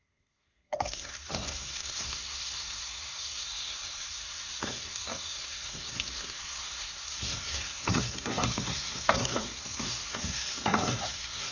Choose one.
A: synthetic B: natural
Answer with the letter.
A